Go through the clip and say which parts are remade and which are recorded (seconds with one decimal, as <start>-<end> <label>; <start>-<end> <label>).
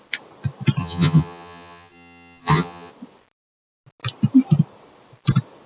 0.0-0.8 recorded; 0.8-2.9 remade; 2.9-5.7 recorded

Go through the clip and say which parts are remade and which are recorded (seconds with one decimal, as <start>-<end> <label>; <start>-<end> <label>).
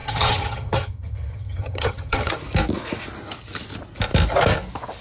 0.0-2.3 remade; 2.3-5.0 recorded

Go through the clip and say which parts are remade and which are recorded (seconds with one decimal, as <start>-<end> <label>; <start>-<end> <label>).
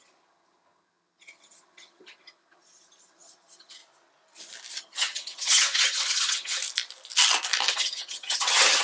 0.0-3.8 remade; 3.8-4.8 recorded; 4.8-6.6 remade; 6.6-7.7 recorded; 7.7-8.8 remade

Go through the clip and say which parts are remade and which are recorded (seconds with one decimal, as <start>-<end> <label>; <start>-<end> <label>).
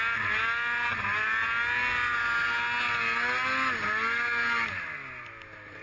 0.0-5.8 recorded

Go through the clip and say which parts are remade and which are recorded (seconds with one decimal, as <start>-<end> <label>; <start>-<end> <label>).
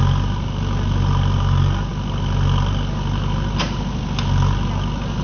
0.0-5.2 recorded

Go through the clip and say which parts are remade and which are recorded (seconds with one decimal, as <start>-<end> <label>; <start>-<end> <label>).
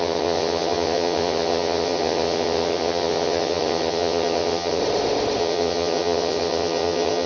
0.0-4.8 remade; 4.8-5.4 recorded; 5.4-7.3 remade